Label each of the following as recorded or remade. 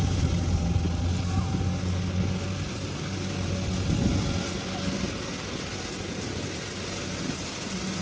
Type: recorded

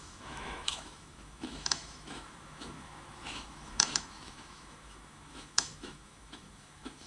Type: remade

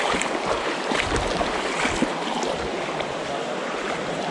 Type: recorded